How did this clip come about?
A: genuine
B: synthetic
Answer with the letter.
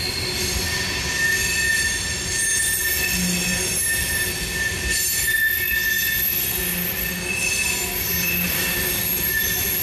A